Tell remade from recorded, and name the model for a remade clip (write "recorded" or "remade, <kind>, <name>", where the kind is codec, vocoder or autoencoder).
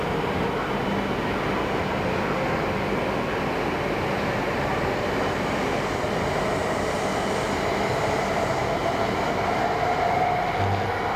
recorded